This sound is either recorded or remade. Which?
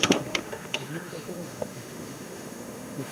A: remade